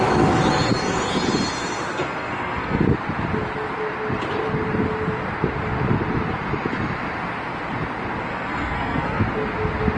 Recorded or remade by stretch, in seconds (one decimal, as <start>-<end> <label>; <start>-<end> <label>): 0.0-1.9 recorded; 1.9-2.8 remade; 2.8-8.3 recorded; 8.3-9.2 remade; 9.2-10.0 recorded